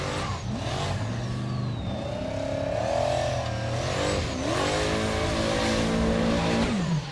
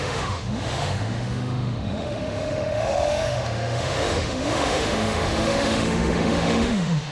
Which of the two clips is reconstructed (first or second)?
second